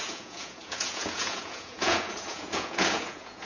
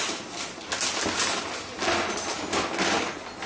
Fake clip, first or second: first